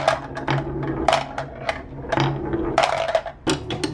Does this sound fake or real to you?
real